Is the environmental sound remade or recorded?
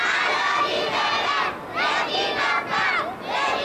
recorded